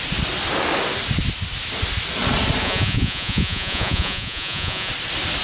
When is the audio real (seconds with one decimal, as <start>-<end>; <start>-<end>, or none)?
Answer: 0.0-2.6; 4.9-5.4